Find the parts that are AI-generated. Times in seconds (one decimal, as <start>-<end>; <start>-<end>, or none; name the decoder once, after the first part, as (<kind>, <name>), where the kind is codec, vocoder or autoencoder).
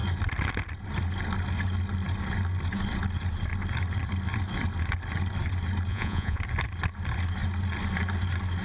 5.9-6.4 (vocoder, Vocos)